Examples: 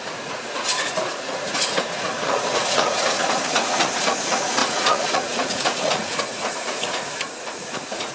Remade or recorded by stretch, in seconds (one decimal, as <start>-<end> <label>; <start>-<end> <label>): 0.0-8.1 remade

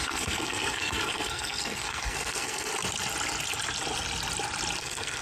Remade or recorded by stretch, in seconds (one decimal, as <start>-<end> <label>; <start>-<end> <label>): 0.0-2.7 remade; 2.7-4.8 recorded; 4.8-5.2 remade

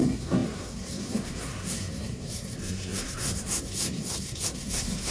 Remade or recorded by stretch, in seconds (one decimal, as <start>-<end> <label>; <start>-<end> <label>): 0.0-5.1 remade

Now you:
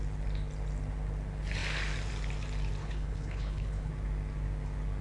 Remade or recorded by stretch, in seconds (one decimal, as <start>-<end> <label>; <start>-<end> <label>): 0.0-2.8 recorded; 2.8-3.9 remade; 3.9-5.0 recorded